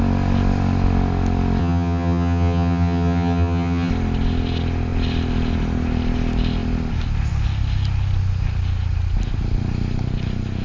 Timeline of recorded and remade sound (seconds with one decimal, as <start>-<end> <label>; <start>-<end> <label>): 0.0-1.6 recorded; 1.6-3.9 remade; 3.9-10.6 recorded